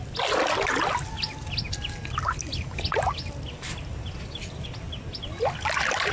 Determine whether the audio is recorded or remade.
recorded